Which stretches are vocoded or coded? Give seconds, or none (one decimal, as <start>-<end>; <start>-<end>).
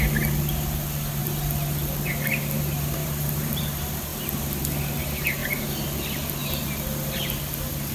3.0-3.6